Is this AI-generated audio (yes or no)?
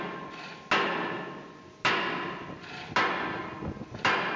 no